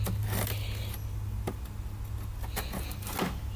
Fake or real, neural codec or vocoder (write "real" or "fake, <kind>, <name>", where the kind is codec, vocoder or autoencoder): real